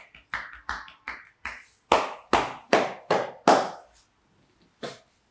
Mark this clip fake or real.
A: real